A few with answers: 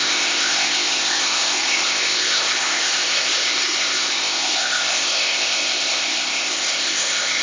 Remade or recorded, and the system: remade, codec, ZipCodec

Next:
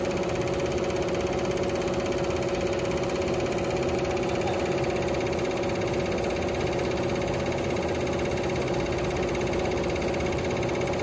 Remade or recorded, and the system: recorded